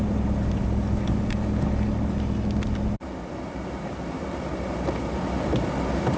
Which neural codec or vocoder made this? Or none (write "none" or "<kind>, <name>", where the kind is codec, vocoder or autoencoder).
none